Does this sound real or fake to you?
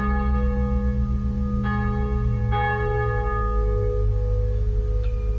real